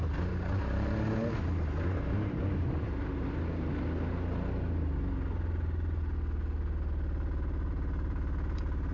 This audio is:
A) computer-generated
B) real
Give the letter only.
B